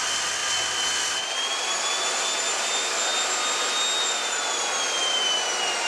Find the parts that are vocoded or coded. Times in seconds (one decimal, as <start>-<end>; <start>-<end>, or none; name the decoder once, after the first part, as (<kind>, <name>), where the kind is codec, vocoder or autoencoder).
none